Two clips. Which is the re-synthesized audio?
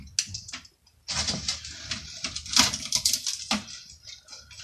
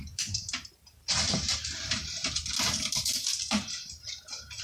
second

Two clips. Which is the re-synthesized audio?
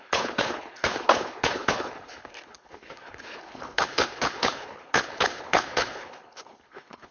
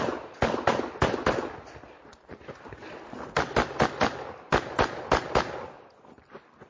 first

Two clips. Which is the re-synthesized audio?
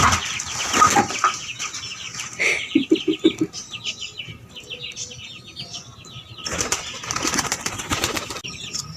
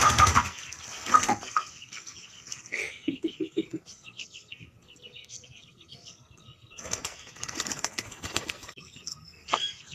second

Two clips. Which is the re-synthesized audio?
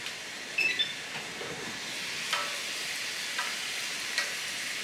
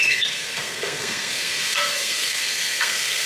second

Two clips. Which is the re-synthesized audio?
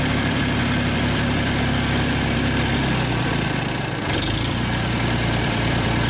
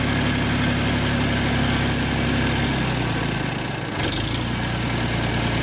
first